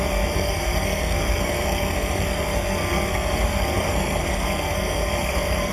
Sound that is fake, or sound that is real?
fake